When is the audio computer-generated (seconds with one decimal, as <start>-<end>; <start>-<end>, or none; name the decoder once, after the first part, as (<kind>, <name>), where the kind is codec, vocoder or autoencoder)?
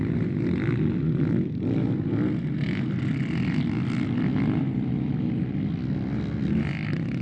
none